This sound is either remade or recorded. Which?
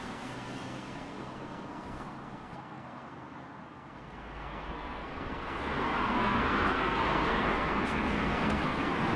remade